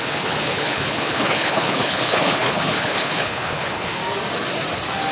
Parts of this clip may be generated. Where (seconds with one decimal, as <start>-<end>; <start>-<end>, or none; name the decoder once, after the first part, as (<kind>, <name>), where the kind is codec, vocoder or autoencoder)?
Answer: 0.0-4.0 (codec, HILCodec)